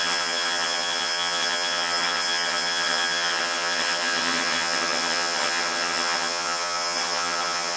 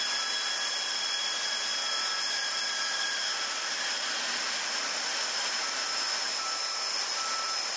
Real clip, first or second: second